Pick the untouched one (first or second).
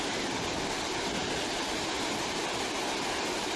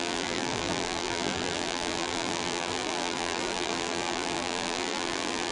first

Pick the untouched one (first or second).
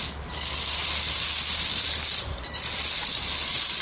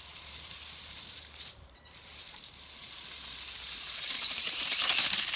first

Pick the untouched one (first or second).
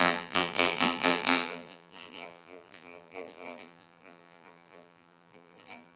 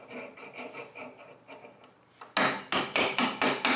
second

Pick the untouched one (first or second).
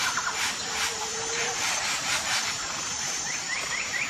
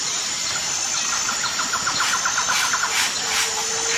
second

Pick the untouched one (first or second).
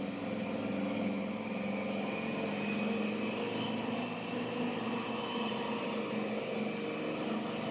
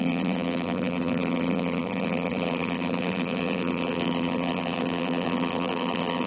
first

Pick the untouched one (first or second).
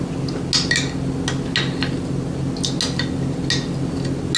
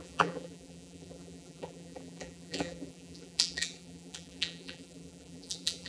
first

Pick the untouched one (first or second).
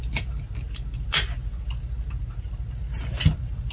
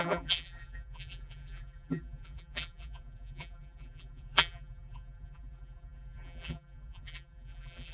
first